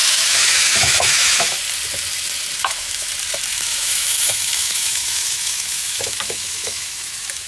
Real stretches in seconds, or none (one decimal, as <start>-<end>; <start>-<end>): 1.6-2.6; 3.1-3.5